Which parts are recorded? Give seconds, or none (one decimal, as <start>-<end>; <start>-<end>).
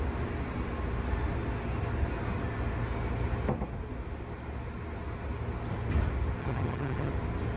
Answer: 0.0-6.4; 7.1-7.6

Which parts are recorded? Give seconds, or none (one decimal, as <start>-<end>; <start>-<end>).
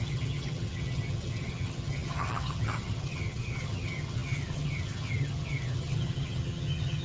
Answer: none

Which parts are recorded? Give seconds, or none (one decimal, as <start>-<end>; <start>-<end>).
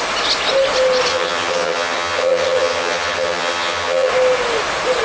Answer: 0.0-1.1; 4.1-5.0